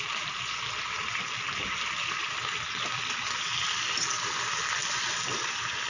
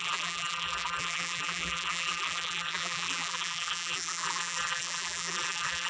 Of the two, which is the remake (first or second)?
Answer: second